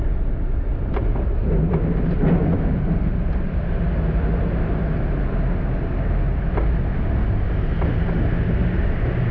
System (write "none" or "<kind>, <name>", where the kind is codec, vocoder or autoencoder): none